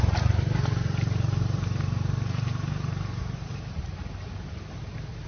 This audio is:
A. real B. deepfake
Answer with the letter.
B